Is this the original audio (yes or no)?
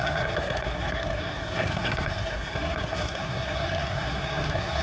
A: no